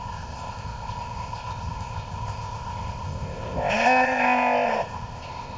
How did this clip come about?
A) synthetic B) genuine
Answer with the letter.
A